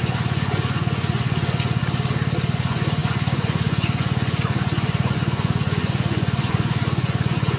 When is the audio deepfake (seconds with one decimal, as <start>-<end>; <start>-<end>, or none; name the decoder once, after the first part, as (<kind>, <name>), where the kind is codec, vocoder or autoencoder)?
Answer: 0.0-1.8 (vocoder, Vocos); 2.5-7.6